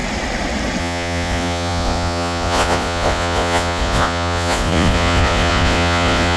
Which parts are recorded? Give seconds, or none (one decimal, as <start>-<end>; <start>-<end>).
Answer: 0.0-0.8